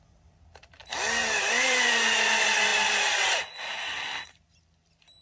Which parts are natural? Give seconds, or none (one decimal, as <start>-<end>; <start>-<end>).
0.8-1.4